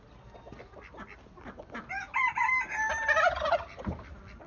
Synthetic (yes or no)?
no